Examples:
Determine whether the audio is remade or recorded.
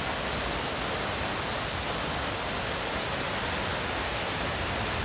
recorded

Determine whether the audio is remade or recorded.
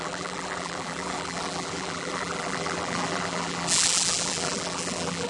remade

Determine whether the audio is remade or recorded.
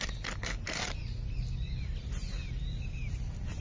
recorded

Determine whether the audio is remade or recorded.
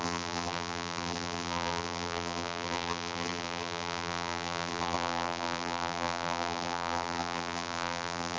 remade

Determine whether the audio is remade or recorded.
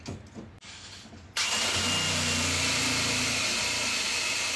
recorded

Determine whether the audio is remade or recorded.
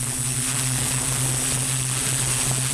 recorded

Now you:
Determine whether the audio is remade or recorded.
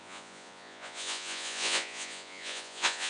remade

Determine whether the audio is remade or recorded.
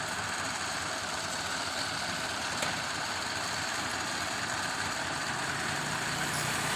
recorded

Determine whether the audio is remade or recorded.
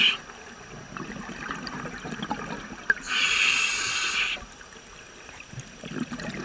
recorded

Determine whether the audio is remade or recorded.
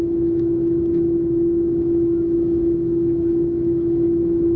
remade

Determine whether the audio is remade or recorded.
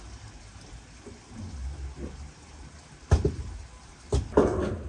recorded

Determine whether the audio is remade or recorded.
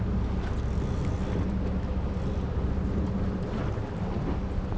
recorded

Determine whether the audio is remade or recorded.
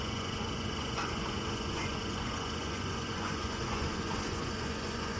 remade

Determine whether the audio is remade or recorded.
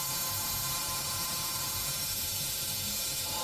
remade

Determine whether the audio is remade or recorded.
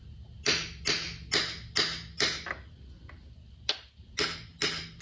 recorded